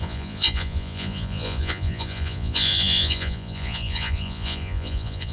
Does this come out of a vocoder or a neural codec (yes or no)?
yes